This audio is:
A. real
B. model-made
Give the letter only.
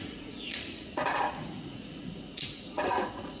B